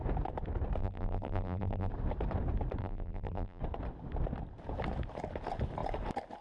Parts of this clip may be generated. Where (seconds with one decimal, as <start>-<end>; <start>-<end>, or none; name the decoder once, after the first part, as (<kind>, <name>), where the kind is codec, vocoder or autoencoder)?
0.8-1.9 (vocoder, BigVGAN v2); 2.8-3.6

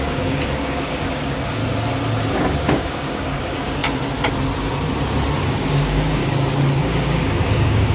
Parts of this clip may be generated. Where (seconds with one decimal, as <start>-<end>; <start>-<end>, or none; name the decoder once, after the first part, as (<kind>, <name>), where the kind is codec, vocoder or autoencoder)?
0.0-1.6 (codec, DAC); 2.3-3.8; 5.5-6.2; 6.8-7.9

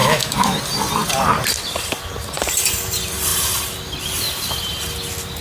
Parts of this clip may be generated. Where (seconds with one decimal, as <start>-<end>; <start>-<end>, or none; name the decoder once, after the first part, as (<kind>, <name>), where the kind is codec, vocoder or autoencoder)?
0.0-0.6 (autoencoder, DAC-VAE)

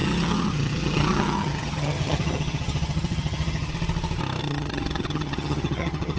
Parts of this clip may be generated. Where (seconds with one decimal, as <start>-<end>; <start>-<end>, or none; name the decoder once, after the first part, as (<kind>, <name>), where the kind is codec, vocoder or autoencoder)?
0.0-3.7 (vocoder, HiFi-GAN); 4.4-6.2

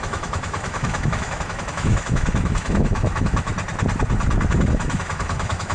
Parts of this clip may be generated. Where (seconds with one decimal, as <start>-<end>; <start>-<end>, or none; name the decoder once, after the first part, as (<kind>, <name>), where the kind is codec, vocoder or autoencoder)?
0.0-3.5 (autoencoder, DAC-VAE); 4.7-5.7

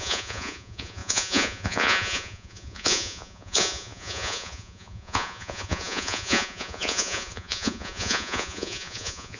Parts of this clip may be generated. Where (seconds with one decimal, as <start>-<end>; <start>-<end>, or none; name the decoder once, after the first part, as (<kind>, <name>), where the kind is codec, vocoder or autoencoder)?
0.0-9.4 (vocoder, Vocos)

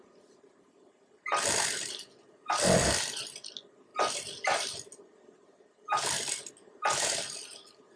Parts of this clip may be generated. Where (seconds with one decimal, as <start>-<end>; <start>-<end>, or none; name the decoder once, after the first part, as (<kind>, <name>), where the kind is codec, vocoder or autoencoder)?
none

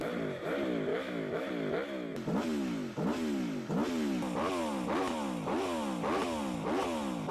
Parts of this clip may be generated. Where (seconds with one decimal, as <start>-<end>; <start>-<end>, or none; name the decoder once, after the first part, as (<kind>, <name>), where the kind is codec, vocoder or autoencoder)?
0.9-1.5 (autoencoder, DAC-VAE)